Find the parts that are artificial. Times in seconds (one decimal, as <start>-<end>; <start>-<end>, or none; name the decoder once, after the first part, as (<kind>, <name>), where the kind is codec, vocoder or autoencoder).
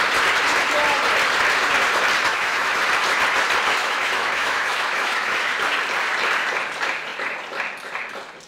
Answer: 2.3-2.8 (autoencoder, DAC-VAE); 3.8-5.6